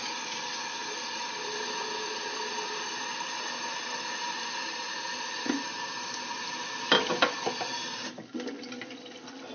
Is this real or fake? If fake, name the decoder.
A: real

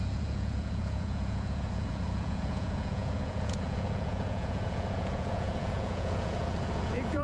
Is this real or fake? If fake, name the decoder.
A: fake, vocoder, Vocos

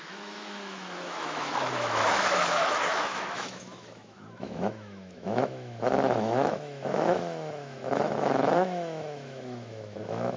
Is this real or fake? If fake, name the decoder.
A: fake, autoencoder, DAC-VAE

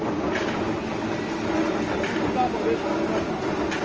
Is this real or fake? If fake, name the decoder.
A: real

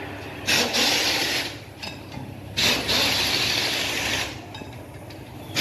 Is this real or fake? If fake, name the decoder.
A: real